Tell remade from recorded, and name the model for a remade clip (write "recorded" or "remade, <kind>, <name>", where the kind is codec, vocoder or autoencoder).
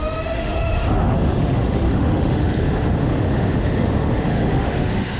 remade, autoencoder, DAC-VAE